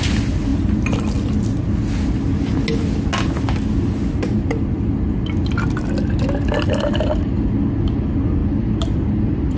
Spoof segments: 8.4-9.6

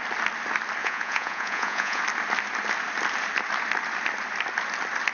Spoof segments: 0.8-2.0

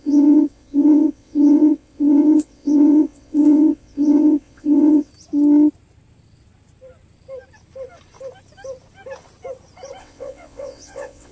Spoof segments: 0.0-5.1; 10.0-11.3

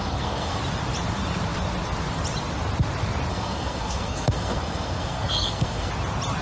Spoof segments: 0.0-0.6; 3.3-5.9

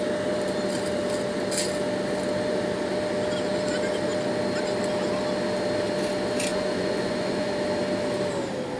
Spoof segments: 6.5-7.5

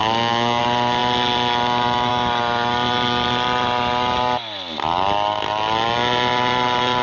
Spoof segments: 0.0-0.6

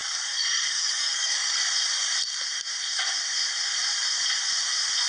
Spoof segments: 0.0-1.6

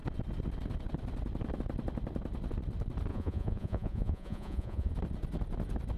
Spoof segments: 3.1-4.9